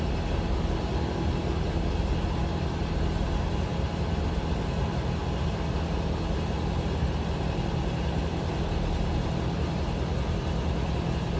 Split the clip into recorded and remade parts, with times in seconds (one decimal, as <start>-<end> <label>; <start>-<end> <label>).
0.0-11.4 recorded